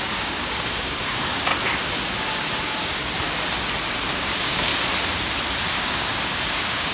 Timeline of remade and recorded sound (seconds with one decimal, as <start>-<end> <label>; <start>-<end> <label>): 0.0-1.5 remade; 1.5-2.6 recorded; 2.6-3.0 remade; 3.0-4.1 recorded; 4.1-4.7 remade; 4.7-5.7 recorded; 5.7-6.9 remade